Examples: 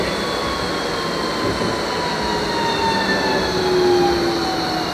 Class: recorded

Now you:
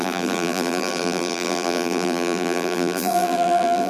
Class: remade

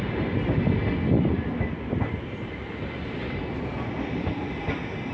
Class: recorded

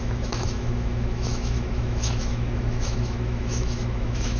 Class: remade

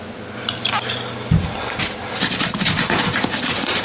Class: recorded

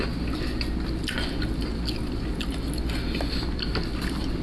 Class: recorded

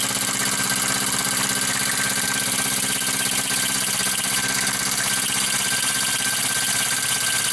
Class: recorded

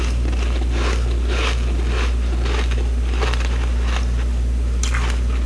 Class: recorded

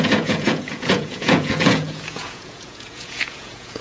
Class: remade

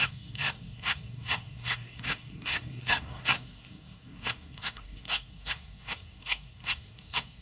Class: remade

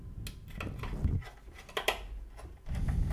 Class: recorded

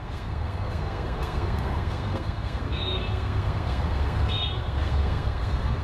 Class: remade